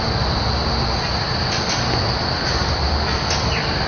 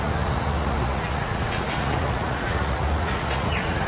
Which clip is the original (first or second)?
first